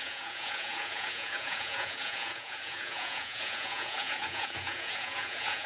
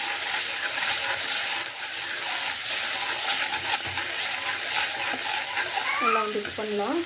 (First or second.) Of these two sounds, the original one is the second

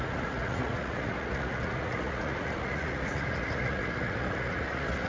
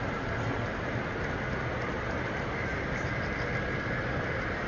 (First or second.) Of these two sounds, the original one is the second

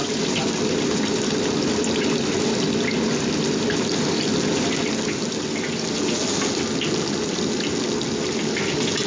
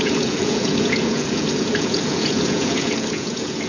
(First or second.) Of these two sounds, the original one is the first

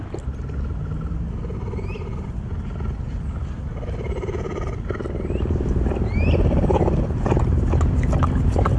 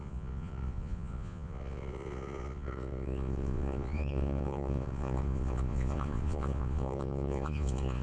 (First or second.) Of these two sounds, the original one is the first